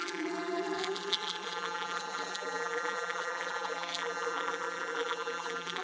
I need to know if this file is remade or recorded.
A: remade